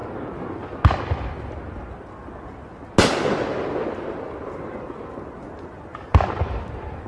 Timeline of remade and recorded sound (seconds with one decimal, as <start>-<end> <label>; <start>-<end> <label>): 0.0-7.1 recorded